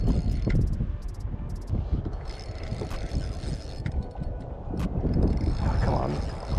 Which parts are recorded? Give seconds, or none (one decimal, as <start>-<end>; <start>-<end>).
0.0-6.6